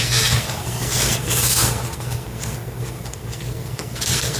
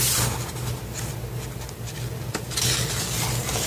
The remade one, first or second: first